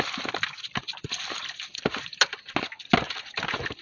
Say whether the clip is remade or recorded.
recorded